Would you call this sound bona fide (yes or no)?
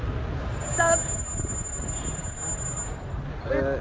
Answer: yes